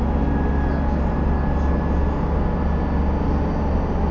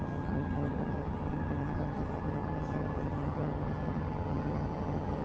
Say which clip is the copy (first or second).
second